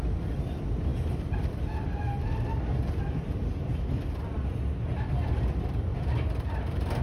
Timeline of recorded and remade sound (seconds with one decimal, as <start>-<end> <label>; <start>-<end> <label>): 0.0-0.9 remade; 0.9-5.1 recorded; 5.1-7.0 remade